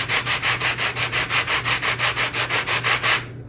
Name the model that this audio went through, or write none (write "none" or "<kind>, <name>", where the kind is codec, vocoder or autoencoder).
none